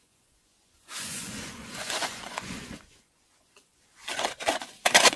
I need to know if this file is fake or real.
fake